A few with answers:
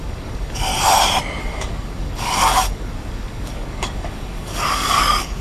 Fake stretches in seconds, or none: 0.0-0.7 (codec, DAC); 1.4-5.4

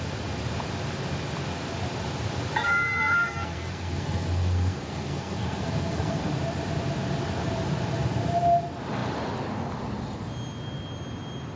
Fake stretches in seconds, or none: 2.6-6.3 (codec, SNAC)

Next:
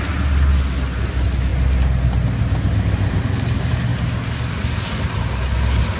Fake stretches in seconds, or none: none

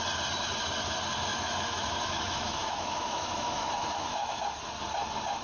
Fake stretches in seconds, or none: 1.3-4.4 (autoencoder, DAC-VAE)